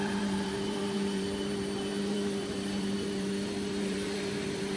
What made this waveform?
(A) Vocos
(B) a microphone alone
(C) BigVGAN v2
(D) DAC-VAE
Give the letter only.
C